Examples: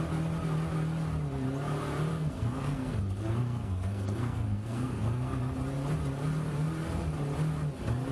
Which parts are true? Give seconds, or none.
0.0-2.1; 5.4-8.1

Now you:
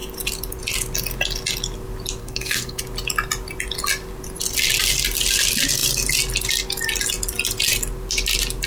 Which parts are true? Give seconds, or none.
0.0-2.2; 2.8-8.7

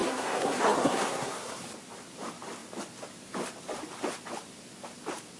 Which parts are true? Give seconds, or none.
1.6-5.4

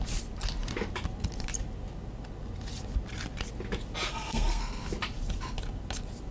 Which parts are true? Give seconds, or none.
0.0-4.1; 4.6-6.3

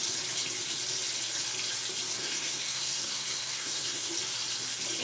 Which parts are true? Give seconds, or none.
0.0-2.2; 4.1-5.0

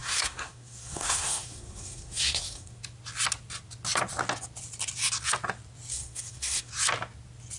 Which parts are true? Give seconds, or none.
2.8-5.9; 6.7-7.6